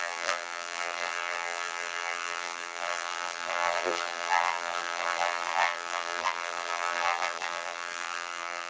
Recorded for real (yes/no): no